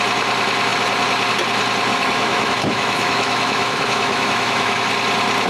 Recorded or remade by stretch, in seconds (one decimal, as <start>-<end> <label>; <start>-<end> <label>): 0.0-1.9 recorded; 1.9-4.8 remade; 4.8-5.5 recorded